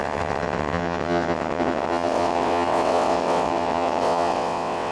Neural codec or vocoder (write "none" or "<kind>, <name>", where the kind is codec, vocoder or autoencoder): vocoder, WaveNeXt